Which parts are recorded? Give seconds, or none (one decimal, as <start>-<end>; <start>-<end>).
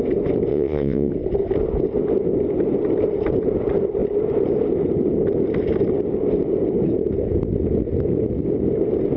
0.0-0.5; 1.1-9.2